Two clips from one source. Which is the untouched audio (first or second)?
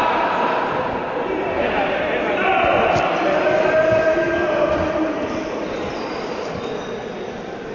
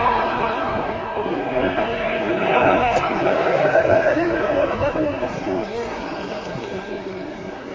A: first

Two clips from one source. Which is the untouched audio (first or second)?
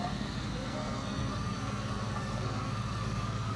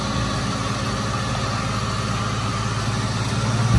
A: second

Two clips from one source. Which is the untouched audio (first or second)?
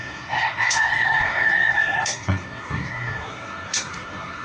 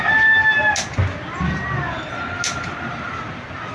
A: second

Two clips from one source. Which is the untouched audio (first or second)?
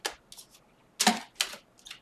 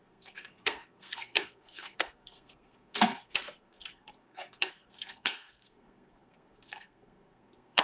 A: first